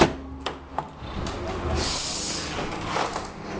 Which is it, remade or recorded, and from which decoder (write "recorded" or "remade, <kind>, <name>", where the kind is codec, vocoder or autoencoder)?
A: recorded